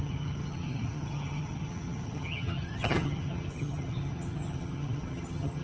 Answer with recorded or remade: remade